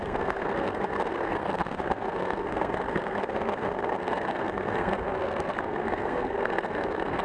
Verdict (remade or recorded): remade